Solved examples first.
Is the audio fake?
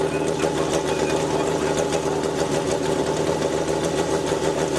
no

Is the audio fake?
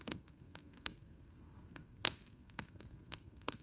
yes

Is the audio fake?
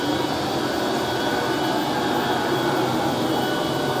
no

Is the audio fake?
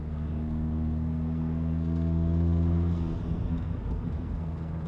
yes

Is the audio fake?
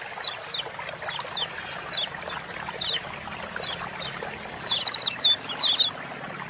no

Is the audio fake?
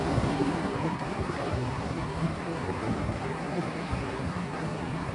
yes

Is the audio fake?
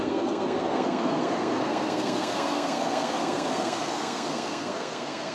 yes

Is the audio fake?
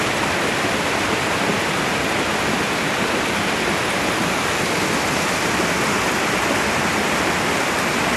no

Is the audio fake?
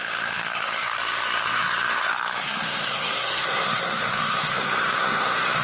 yes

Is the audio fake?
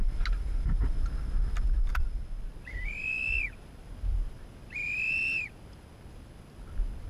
no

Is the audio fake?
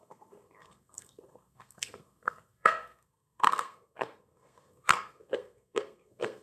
yes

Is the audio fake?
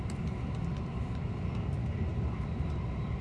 no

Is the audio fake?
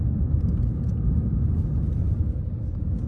no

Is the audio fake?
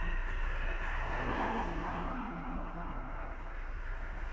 yes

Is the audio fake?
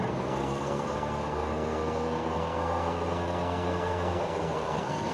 yes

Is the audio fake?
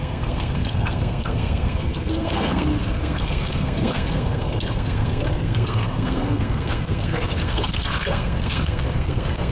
yes